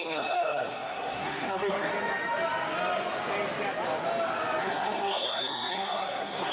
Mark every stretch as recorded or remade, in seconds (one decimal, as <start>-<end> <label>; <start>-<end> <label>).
0.0-1.9 remade; 1.9-4.6 recorded; 4.6-6.5 remade